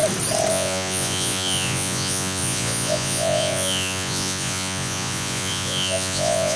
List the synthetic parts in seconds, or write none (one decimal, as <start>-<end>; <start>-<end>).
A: 0.5-6.6